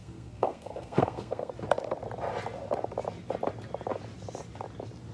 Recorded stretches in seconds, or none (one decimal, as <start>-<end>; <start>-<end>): 1.5-5.1